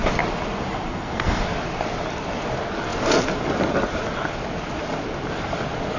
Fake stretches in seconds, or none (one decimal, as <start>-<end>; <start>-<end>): 0.9-1.4